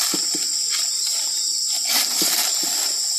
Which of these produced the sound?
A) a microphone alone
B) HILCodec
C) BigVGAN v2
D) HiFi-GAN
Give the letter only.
C